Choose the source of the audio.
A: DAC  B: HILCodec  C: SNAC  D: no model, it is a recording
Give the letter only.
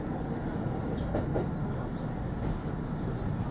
D